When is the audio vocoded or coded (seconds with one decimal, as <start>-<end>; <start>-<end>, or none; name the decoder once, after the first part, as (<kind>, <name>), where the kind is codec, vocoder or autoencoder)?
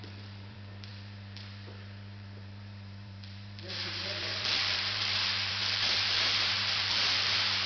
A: 0.0-7.7 (vocoder, BigVGAN v2)